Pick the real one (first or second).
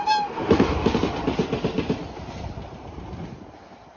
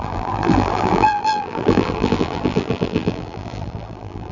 first